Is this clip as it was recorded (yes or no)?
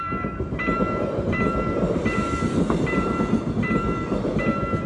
yes